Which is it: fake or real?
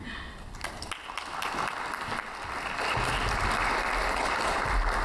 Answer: real